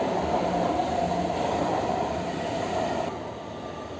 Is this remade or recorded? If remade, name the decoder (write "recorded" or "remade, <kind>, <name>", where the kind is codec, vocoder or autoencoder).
remade, vocoder, BigVGAN v2